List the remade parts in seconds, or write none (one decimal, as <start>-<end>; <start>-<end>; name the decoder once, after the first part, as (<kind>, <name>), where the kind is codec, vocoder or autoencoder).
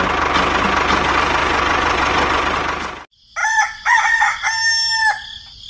1.4-2.4 (vocoder, Vocos); 3.4-4.4